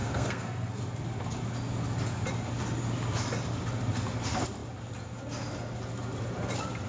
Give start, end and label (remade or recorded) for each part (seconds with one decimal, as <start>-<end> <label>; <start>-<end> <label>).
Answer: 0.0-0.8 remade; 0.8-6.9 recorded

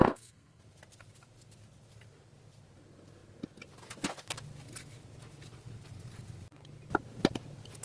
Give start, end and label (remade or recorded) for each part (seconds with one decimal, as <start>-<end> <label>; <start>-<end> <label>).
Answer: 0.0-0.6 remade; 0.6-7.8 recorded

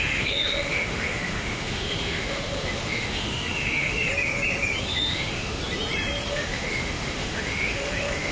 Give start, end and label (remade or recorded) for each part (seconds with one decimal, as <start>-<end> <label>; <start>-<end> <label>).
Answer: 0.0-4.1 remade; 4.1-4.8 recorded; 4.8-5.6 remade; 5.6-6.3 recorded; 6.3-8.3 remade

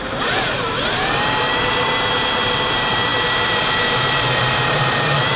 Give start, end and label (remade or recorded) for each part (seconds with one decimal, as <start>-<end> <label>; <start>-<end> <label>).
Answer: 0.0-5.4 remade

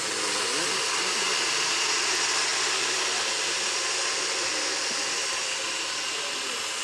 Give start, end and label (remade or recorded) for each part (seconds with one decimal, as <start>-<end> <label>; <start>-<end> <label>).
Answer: 0.0-6.8 recorded

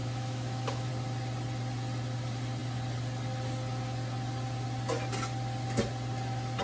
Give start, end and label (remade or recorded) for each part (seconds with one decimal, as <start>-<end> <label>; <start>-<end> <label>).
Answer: 0.0-0.9 remade; 0.9-6.6 recorded

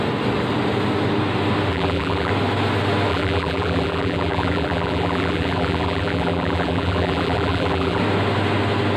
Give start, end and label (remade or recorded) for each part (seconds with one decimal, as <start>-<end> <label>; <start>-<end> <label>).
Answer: 0.0-1.7 recorded; 1.7-2.3 remade; 2.3-3.1 recorded; 3.1-8.0 remade; 8.0-9.0 recorded